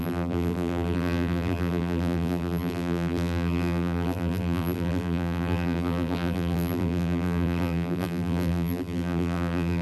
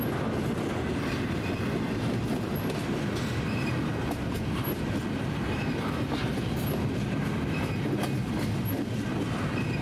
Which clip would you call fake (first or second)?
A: first